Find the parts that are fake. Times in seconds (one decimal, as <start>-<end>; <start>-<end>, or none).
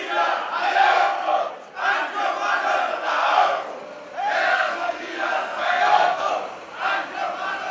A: 0.6-1.5; 2.9-3.7; 4.5-6.3